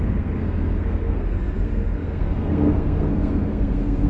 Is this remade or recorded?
remade